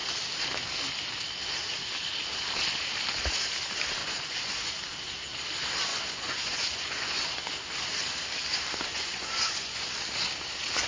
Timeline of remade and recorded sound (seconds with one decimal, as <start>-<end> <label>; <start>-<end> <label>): 0.0-4.0 recorded; 4.0-4.7 remade; 4.7-5.9 recorded; 5.9-7.2 remade; 7.2-8.9 recorded; 8.9-9.9 remade; 9.9-10.9 recorded